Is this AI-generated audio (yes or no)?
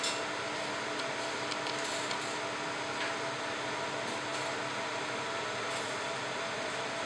no